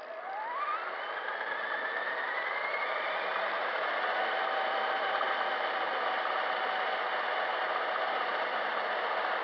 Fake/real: real